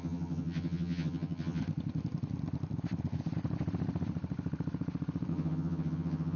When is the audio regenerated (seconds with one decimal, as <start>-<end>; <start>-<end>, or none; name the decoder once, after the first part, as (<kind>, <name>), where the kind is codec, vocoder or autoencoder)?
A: 0.0-1.6 (vocoder, HiFi-GAN); 5.3-6.4